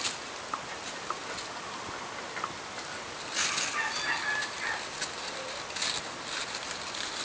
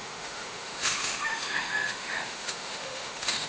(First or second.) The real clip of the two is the first